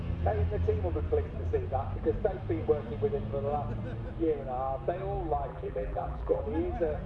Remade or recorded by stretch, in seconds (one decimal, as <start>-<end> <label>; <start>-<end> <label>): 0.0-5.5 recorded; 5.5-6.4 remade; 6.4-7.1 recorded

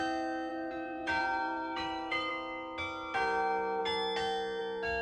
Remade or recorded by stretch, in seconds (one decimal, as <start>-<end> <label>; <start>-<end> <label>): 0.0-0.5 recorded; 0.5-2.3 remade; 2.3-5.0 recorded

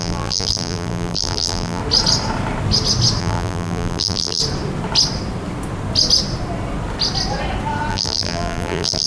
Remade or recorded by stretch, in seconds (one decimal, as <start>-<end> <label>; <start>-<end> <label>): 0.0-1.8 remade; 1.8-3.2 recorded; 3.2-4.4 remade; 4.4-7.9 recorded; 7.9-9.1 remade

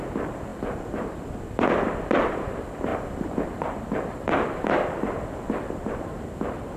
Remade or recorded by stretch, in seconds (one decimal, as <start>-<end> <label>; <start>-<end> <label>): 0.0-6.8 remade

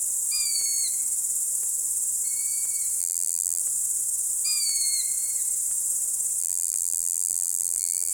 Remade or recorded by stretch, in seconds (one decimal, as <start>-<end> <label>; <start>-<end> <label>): 0.0-3.0 recorded; 3.0-3.6 remade; 3.6-6.4 recorded; 6.4-8.1 remade

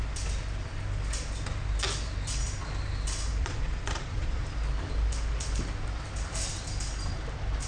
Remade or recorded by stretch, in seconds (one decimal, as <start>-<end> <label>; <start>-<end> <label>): 0.0-3.4 recorded; 3.4-4.4 remade; 4.4-7.7 recorded